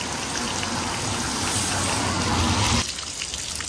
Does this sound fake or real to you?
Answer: real